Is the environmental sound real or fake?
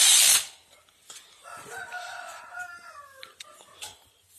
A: real